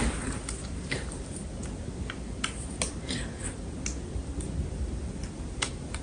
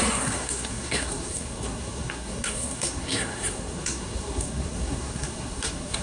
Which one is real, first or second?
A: first